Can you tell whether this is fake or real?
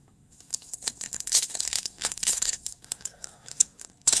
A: fake